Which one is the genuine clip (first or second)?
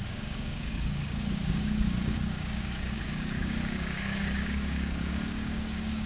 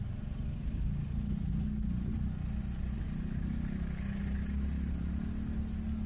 second